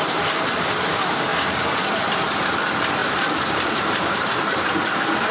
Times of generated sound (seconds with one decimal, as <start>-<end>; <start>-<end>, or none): 3.0-4.8

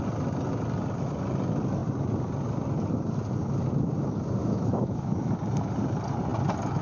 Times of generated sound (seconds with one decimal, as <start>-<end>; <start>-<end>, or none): 4.4-5.3

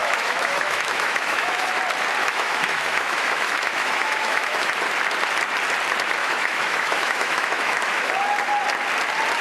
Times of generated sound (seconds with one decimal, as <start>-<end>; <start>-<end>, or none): 0.0-1.7; 2.2-4.7; 6.2-8.1

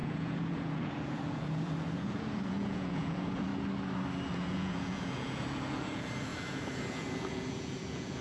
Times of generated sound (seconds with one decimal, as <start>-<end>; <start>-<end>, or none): 0.0-3.5; 4.3-8.2

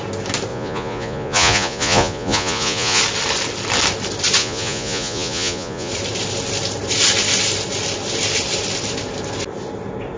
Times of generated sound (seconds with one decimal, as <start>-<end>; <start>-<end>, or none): 0.5-3.0; 4.4-5.9

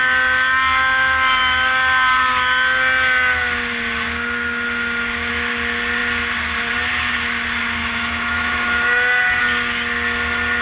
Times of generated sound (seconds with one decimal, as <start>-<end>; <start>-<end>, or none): 7.8-9.4